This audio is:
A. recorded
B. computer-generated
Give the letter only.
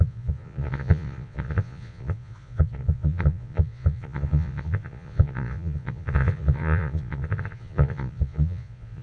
B